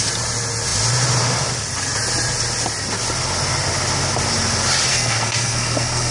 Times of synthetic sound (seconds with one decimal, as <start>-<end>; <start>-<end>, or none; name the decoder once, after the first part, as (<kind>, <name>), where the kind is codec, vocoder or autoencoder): 4.9-6.1 (codec, SNAC)